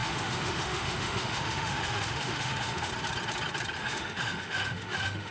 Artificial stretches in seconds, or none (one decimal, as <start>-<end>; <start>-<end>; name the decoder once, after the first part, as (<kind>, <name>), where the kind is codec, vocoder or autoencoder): 0.0-2.9 (autoencoder, DAC-VAE); 3.8-5.3